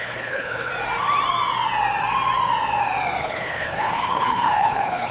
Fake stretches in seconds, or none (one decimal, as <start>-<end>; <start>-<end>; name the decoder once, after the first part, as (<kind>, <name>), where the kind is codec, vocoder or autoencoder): 0.0-0.7 (codec, HILCodec); 3.2-5.1